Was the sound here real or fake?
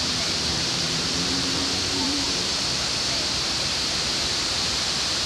fake